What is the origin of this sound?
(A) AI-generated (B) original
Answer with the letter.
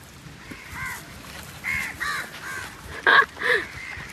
B